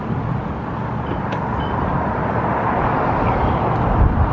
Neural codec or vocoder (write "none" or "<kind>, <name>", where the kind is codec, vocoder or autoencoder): none